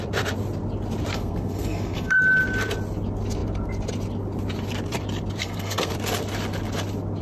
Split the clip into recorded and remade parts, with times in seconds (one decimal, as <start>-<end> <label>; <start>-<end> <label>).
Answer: 0.0-1.1 recorded; 1.1-2.2 remade; 2.2-5.4 recorded; 5.4-5.9 remade; 5.9-7.2 recorded